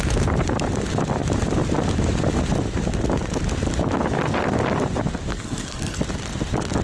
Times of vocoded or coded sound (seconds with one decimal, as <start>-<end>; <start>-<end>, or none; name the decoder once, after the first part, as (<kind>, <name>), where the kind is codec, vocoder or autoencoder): 5.3-6.0 (codec, SNAC)